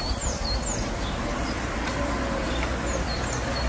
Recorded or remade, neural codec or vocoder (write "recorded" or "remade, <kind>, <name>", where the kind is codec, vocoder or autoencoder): recorded